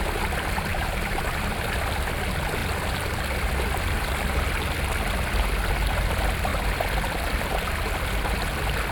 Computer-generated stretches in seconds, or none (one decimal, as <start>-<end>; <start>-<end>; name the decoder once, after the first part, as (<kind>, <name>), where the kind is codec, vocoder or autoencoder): 0.7-1.2 (vocoder, BigVGAN v2)